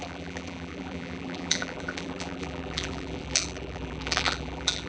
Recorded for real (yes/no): no